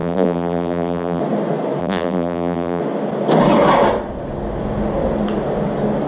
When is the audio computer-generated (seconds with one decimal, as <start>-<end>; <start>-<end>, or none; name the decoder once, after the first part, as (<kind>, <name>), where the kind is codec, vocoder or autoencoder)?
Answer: 0.0-1.2 (vocoder, BigVGAN v2); 1.8-2.8